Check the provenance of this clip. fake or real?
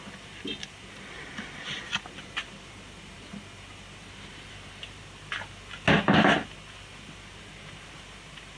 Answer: real